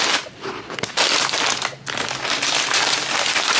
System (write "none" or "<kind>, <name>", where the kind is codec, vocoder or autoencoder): none